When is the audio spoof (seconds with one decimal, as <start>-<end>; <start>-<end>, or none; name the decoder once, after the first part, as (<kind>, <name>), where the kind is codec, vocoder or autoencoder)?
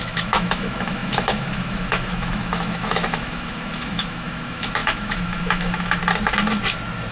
0.0-6.0 (autoencoder, DAC-VAE)